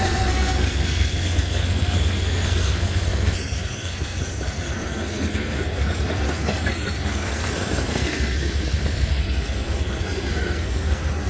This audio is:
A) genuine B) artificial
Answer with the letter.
B